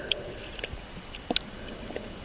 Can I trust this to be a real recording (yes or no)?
yes